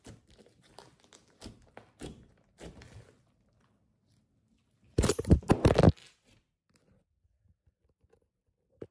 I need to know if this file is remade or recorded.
recorded